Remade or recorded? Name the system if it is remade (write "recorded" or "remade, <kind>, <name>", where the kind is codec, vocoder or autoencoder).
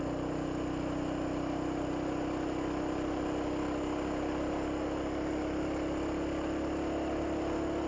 recorded